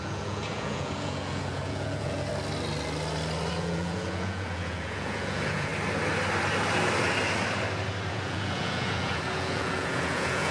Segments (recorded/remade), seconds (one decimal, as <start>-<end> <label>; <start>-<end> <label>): 0.0-2.3 remade; 2.3-3.5 recorded; 3.5-5.7 remade; 5.7-8.1 recorded; 8.1-10.5 remade